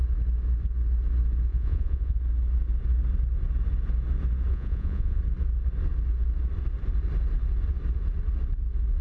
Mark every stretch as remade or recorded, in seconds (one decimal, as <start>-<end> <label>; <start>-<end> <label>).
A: 0.0-1.5 recorded; 1.5-2.2 remade; 2.2-4.5 recorded; 4.5-5.2 remade; 5.2-9.0 recorded